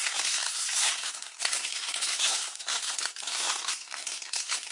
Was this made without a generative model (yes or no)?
no